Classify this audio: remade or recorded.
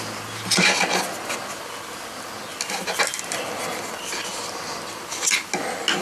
recorded